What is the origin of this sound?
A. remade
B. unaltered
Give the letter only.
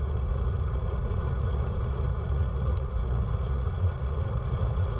A